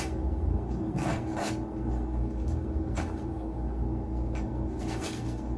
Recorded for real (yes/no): no